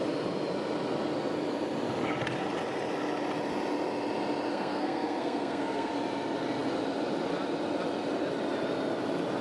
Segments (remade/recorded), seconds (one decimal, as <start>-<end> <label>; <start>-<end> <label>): 0.0-4.5 recorded; 4.5-5.9 remade; 5.9-9.4 recorded